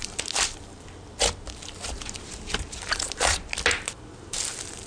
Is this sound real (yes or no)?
yes